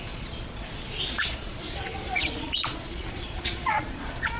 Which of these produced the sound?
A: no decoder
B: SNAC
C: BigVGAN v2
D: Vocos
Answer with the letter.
D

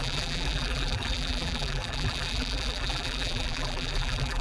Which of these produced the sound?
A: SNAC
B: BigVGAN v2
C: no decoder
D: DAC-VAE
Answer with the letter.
B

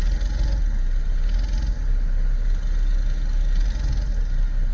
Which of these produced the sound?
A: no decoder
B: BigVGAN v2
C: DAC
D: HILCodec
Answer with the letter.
A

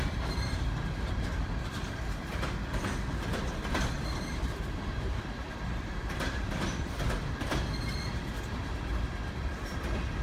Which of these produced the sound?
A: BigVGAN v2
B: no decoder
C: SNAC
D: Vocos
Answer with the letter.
A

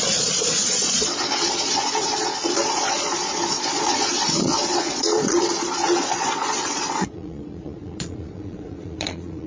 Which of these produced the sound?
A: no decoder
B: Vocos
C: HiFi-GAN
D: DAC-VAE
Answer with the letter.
B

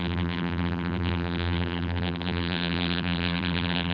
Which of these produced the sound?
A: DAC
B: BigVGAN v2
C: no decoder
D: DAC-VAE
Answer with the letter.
B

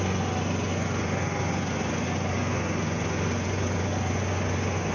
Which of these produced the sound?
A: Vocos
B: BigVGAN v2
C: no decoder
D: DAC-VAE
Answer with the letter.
A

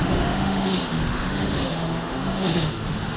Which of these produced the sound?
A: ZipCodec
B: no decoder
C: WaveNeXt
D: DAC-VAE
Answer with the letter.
D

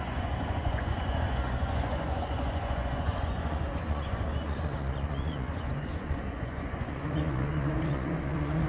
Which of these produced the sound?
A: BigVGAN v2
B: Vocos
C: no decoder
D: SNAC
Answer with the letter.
B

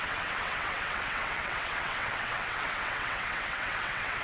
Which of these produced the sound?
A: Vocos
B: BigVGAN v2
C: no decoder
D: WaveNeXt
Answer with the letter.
D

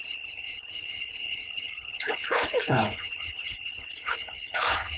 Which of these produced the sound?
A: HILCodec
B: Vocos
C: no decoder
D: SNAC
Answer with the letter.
A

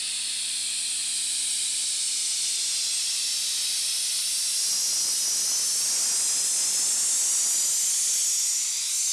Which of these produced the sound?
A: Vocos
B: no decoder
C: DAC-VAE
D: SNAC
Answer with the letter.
B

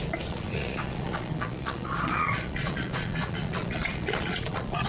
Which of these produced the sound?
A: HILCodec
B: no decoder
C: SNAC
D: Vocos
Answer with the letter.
D